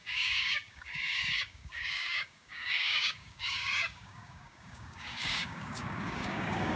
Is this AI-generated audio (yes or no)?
yes